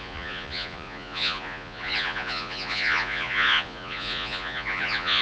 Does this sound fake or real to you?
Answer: fake